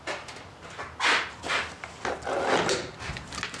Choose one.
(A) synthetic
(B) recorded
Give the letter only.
B